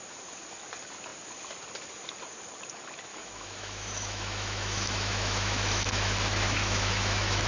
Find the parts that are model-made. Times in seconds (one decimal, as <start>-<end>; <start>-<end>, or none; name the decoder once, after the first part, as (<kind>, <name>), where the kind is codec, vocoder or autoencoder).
3.1-7.5 (autoencoder, DAC-VAE)